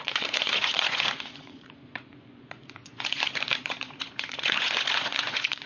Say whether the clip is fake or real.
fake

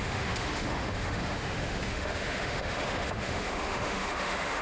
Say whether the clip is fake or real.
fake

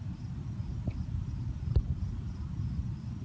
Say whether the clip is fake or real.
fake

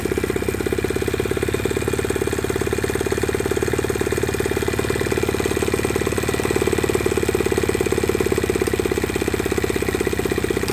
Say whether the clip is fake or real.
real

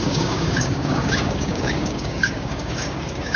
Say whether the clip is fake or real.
fake